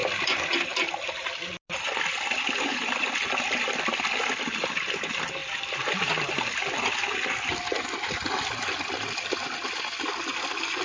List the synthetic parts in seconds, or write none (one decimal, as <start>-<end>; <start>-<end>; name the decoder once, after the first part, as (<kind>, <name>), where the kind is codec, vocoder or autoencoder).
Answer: none